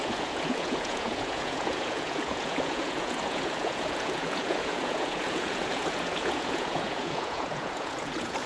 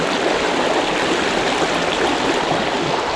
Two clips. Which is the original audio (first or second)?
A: second